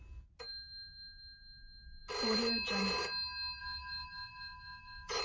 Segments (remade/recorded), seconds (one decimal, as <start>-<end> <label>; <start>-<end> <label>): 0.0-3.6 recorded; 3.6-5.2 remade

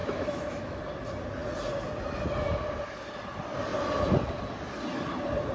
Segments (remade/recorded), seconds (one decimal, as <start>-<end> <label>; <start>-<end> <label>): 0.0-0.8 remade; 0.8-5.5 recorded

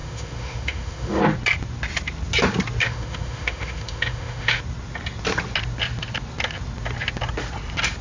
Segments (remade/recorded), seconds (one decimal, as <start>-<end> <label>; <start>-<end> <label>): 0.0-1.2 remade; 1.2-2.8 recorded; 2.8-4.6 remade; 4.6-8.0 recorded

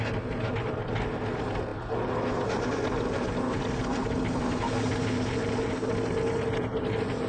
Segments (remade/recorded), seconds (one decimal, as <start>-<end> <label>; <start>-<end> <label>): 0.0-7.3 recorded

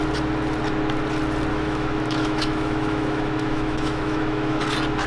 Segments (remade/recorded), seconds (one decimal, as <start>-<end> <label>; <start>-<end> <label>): 0.0-1.5 recorded; 1.5-4.6 remade; 4.6-5.1 recorded

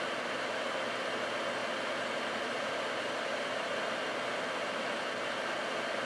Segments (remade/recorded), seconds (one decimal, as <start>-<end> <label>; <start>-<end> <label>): 0.0-6.1 recorded